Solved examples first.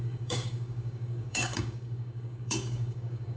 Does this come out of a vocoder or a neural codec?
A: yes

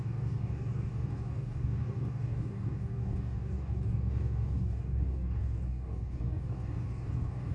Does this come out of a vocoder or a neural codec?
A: yes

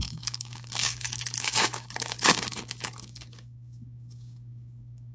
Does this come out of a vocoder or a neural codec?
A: yes